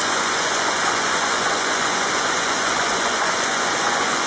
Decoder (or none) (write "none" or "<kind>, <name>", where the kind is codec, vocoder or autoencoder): vocoder, Vocos